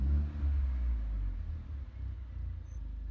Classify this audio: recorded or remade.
recorded